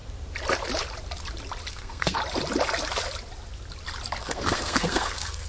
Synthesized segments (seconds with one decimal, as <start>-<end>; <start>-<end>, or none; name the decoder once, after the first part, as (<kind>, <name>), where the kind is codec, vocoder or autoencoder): 1.7-2.2 (codec, SNAC); 4.2-5.5